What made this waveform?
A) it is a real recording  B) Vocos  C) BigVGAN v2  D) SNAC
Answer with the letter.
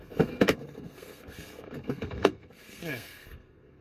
D